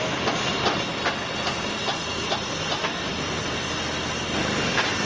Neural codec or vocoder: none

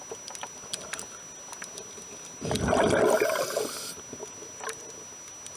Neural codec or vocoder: none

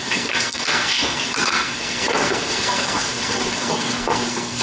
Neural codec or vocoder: codec, SNAC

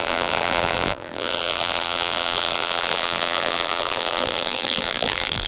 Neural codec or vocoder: vocoder, BigVGAN v2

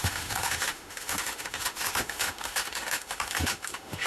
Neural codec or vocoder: autoencoder, DAC-VAE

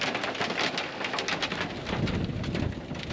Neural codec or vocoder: none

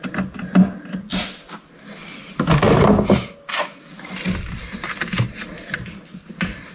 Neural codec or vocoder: none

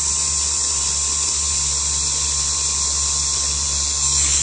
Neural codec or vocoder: none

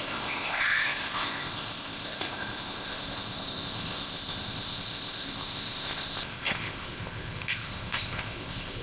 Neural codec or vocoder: codec, ZipCodec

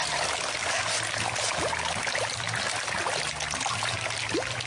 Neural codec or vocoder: none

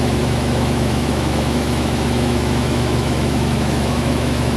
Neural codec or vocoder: autoencoder, DAC-VAE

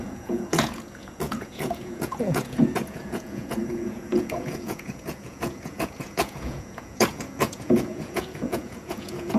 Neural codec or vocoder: vocoder, Vocos